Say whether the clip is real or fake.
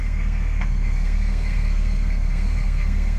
fake